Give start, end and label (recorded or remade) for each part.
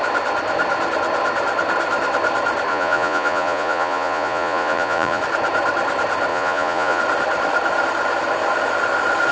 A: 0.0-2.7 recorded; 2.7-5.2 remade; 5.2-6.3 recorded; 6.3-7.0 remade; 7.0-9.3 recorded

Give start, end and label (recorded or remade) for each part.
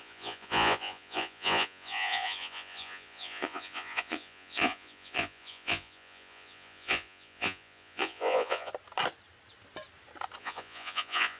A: 0.0-8.7 remade; 8.7-10.4 recorded; 10.4-11.4 remade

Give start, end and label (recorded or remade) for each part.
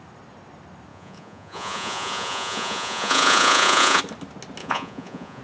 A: 0.0-0.9 recorded; 0.9-4.0 remade; 4.0-4.6 recorded; 4.6-5.4 remade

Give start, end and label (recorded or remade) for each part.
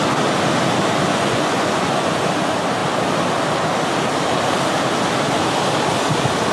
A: 0.0-1.1 recorded; 1.1-2.1 remade; 2.1-6.5 recorded